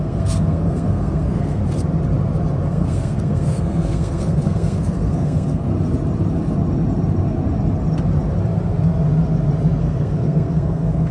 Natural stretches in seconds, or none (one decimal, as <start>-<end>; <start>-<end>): 1.6-2.7; 5.7-9.8